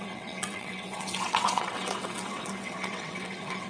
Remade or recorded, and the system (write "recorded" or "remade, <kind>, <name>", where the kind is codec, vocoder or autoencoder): remade, vocoder, WaveNeXt